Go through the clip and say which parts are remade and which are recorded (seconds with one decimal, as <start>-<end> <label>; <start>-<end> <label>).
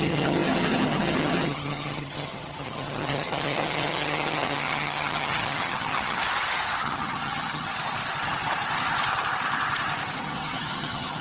0.0-6.2 remade; 6.2-6.8 recorded; 6.8-7.7 remade; 7.7-10.2 recorded; 10.2-11.2 remade